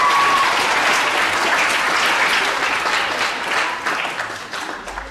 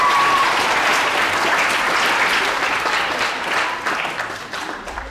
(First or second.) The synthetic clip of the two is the second